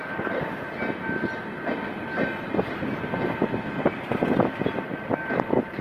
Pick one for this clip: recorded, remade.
recorded